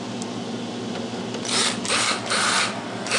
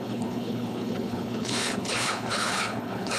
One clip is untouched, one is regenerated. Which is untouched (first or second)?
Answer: first